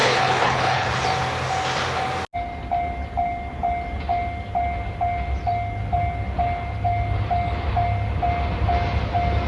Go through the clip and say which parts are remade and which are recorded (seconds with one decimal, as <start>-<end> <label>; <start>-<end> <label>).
0.0-0.9 remade; 0.9-9.5 recorded